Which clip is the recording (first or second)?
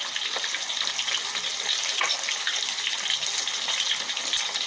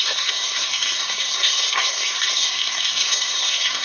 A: first